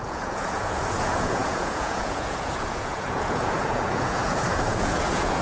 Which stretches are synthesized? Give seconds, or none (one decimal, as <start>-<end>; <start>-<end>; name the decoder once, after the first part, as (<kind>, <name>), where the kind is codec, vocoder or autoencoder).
0.0-5.4 (vocoder, Vocos)